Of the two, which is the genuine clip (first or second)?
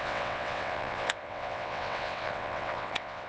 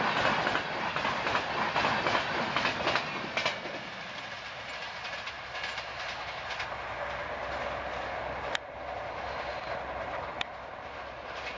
second